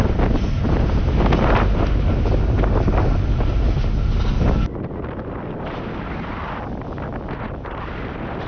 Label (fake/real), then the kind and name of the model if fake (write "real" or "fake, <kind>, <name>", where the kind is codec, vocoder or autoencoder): real